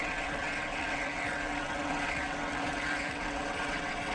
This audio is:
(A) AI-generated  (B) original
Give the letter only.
A